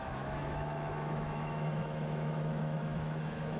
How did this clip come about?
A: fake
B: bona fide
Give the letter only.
A